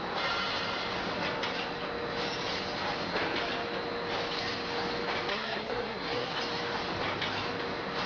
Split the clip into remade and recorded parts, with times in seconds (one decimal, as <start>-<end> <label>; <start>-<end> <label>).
0.0-5.3 recorded; 5.3-6.4 remade; 6.4-8.1 recorded